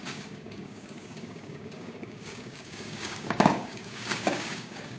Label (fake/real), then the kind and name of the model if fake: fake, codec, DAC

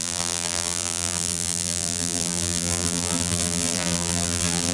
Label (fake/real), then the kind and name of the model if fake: fake, vocoder, BigVGAN v2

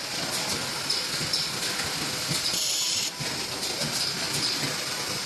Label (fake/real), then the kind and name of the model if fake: real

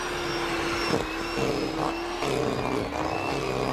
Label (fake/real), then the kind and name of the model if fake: real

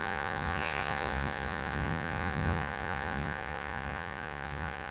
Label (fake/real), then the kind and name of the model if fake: fake, vocoder, Vocos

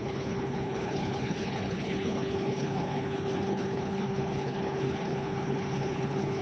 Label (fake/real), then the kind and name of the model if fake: fake, codec, HILCodec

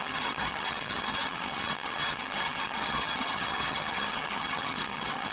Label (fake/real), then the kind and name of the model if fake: fake, vocoder, HiFi-GAN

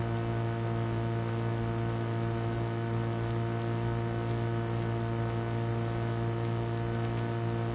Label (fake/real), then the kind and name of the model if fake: real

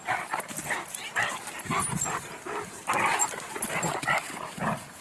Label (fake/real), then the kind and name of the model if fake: real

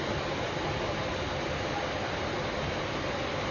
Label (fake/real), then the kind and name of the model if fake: real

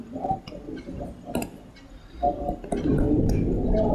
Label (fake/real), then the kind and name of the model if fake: real